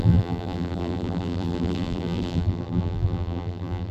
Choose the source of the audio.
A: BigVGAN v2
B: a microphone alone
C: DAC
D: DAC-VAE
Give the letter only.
A